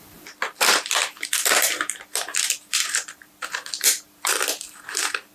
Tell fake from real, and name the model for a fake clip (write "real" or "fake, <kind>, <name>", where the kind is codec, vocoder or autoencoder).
fake, vocoder, BigVGAN v2